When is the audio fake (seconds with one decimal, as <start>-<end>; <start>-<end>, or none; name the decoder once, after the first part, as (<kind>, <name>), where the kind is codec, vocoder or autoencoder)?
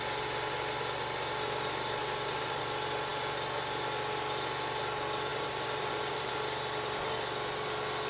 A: 2.0-2.6 (vocoder, BigVGAN v2); 5.3-6.3